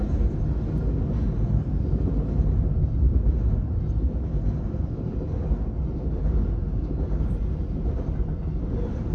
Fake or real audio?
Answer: real